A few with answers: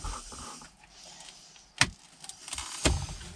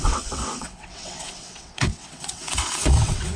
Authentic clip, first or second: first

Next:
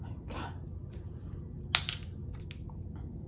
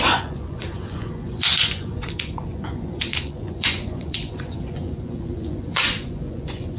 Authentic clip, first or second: first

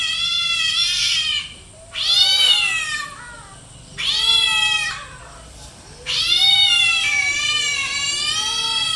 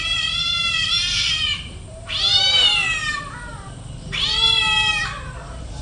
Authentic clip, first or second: first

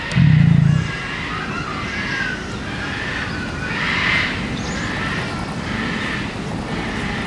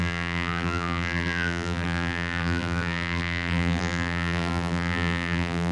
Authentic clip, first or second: first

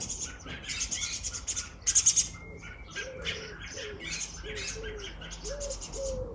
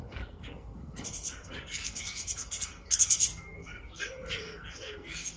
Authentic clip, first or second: first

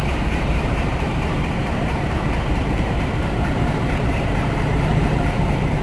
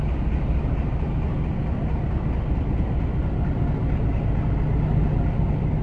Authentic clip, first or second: second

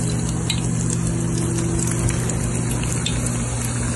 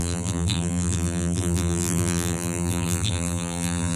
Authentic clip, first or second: first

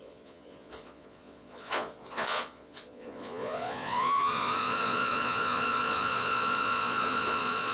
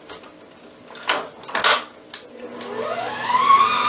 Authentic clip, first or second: second